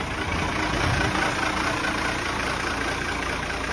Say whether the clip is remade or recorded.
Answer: recorded